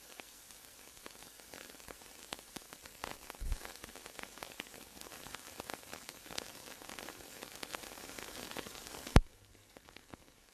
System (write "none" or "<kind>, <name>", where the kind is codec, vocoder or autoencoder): codec, SNAC